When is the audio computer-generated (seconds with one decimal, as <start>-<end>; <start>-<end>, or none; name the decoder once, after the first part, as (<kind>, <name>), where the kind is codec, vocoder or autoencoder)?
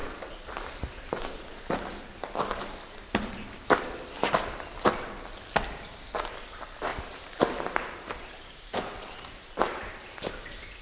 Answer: 1.5-4.6 (vocoder, BigVGAN v2); 6.9-10.3